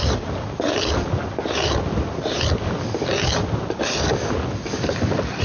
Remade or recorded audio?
recorded